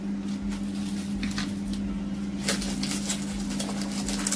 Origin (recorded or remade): recorded